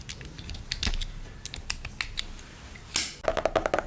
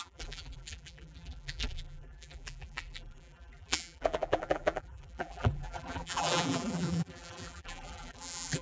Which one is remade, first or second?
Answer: second